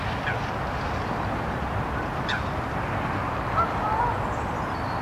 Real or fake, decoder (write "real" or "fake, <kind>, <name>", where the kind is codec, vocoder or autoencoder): real